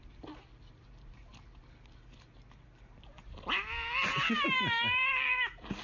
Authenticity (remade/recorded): recorded